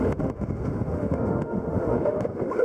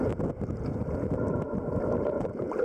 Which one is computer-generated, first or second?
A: first